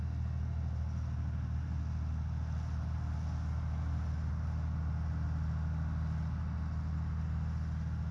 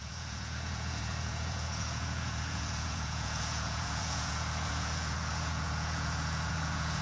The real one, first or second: first